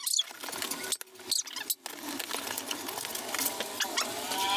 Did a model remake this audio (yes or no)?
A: no